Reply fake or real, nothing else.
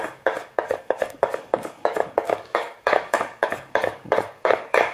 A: fake